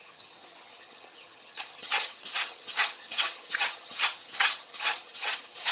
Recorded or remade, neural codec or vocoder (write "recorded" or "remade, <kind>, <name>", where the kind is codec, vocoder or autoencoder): remade, vocoder, HiFi-GAN